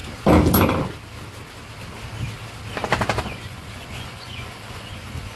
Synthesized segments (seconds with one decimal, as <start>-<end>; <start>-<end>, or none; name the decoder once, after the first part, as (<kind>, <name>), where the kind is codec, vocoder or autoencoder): 3.2-5.4 (vocoder, Vocos)